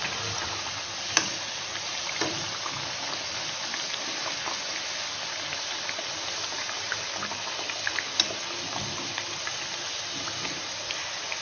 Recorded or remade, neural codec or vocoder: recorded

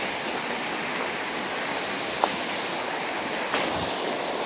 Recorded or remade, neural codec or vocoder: recorded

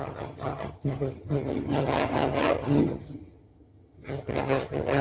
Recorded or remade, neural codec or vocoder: remade, vocoder, HiFi-GAN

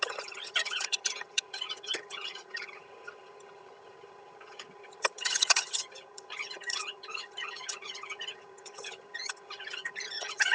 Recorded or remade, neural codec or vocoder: remade, vocoder, HiFi-GAN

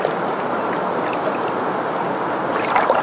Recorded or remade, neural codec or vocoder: recorded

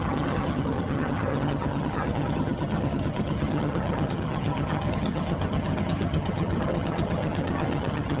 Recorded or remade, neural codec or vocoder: remade, vocoder, HiFi-GAN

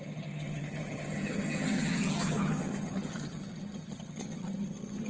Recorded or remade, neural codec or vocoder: remade, vocoder, HiFi-GAN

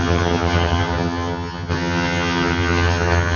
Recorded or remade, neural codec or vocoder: remade, vocoder, HiFi-GAN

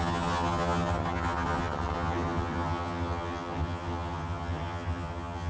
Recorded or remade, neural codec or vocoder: remade, vocoder, HiFi-GAN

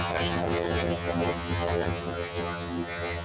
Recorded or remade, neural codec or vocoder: remade, vocoder, HiFi-GAN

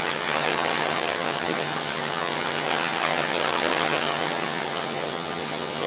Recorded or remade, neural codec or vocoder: remade, vocoder, HiFi-GAN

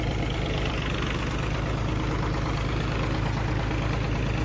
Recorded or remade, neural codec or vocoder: recorded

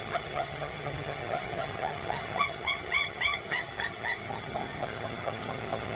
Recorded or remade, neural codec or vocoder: remade, vocoder, HiFi-GAN